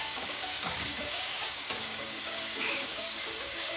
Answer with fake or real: fake